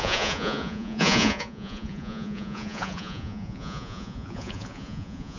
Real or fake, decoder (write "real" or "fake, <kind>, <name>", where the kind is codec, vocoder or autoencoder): fake, vocoder, Vocos